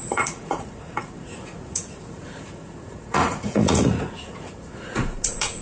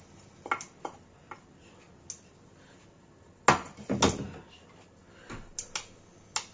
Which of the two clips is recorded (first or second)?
second